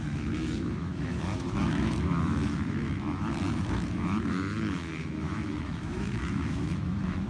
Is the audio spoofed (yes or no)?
yes